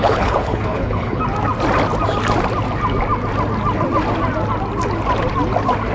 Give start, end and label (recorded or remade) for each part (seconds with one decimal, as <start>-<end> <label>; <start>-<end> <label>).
0.0-1.2 remade; 1.2-5.9 recorded